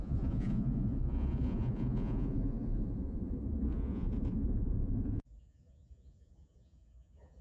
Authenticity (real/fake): fake